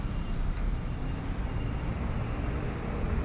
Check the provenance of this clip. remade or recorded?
recorded